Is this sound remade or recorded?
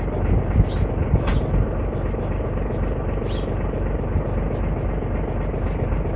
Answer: recorded